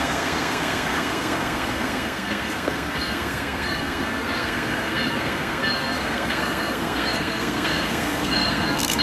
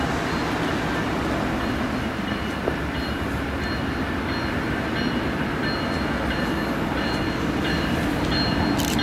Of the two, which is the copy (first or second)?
first